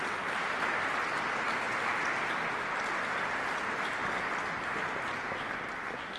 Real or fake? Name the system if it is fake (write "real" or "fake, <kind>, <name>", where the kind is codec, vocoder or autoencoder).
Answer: real